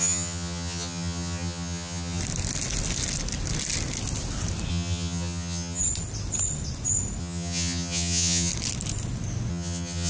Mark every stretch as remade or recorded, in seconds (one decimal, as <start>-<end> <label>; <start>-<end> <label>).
0.0-2.2 remade; 2.2-4.7 recorded; 4.7-5.8 remade; 5.8-7.2 recorded; 7.2-8.5 remade; 8.5-9.5 recorded; 9.5-10.1 remade

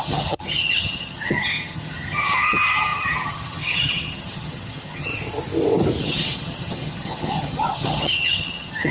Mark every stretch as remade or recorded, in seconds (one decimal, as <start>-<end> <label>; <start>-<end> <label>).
0.0-5.1 remade; 5.1-6.0 recorded; 6.0-8.9 remade

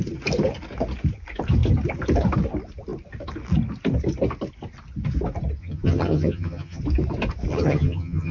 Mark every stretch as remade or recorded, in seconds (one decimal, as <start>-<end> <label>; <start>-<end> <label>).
0.0-5.6 recorded; 5.6-6.8 remade; 6.8-7.5 recorded; 7.5-8.3 remade